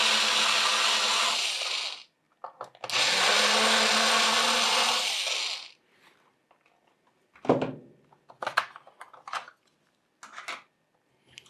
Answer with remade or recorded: recorded